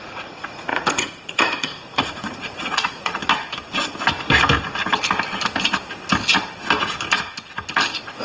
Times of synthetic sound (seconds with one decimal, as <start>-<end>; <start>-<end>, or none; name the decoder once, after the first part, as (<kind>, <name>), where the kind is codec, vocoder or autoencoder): 0.0-3.2 (vocoder, Vocos)